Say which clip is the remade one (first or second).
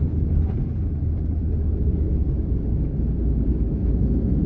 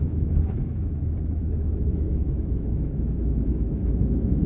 second